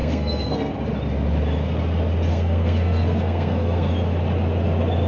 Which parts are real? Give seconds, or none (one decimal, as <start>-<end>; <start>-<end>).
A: 0.7-2.3; 3.9-5.1

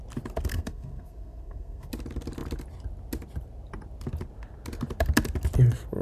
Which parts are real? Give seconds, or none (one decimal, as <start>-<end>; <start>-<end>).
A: 0.0-0.5; 1.9-6.0

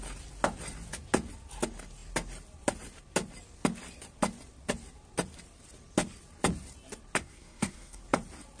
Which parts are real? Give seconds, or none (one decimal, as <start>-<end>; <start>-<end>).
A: 0.0-7.2; 8.0-8.6